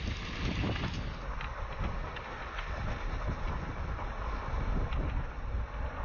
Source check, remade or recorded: recorded